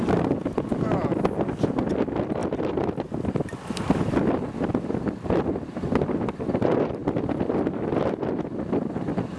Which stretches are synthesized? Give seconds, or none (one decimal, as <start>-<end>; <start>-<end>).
2.4-4.3